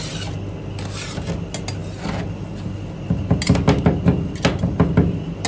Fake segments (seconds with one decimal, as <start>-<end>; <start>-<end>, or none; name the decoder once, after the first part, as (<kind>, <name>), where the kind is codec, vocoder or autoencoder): none